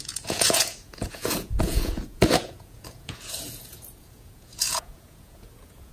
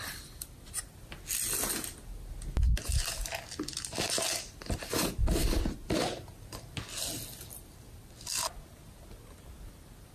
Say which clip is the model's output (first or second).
first